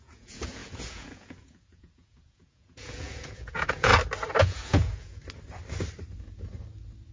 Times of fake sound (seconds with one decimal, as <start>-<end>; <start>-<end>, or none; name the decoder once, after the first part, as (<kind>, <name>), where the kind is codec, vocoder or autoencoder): 0.0-3.9 (vocoder, Vocos); 4.4-5.2